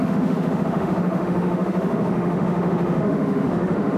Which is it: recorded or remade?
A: remade